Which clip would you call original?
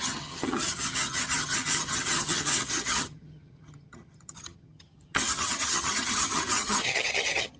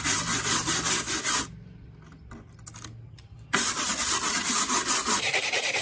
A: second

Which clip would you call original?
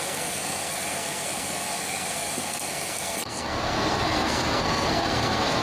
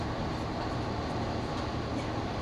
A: second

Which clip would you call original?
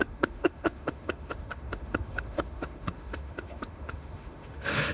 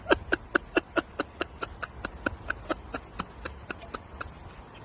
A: second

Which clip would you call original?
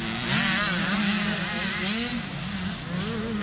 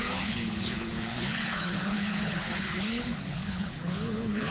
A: first